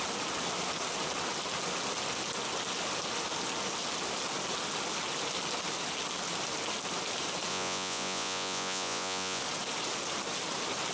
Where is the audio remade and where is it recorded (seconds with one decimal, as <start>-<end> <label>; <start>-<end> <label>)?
0.0-7.5 recorded; 7.5-9.4 remade; 9.4-10.9 recorded